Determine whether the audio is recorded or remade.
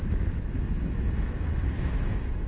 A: remade